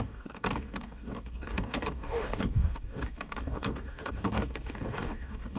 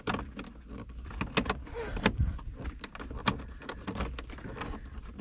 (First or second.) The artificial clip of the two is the first